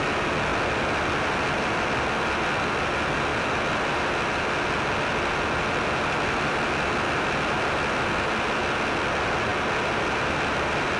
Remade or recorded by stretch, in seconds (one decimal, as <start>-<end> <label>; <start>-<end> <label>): 0.0-11.0 recorded